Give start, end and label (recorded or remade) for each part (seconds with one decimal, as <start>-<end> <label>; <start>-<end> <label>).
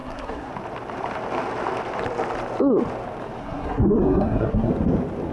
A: 0.0-0.5 remade; 0.5-3.4 recorded; 3.4-4.7 remade; 4.7-5.3 recorded